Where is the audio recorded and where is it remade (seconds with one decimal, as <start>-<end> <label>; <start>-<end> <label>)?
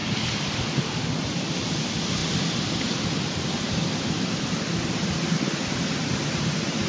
0.0-6.9 remade